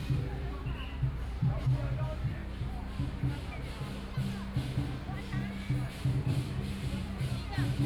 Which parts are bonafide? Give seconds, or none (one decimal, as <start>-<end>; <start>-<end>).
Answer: 2.4-5.9